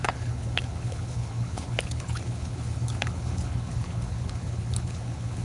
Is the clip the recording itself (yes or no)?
no